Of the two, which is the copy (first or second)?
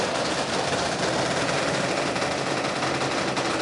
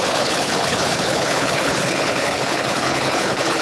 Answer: second